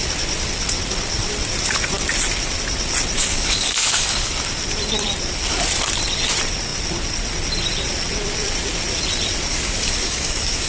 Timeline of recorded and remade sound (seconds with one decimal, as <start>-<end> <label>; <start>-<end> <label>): 0.0-3.2 recorded; 3.2-4.3 remade; 4.3-9.5 recorded; 9.5-10.7 remade